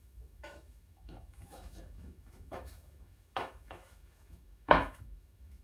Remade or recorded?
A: remade